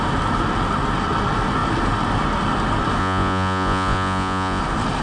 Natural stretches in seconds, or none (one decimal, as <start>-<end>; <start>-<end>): 0.0-3.0; 4.6-5.0

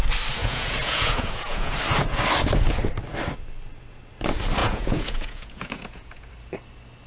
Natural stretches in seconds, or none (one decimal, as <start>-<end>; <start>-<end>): 0.0-0.4; 1.8-4.6; 6.3-7.1